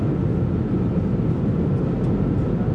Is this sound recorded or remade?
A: recorded